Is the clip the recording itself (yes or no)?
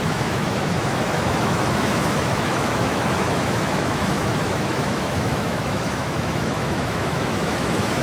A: no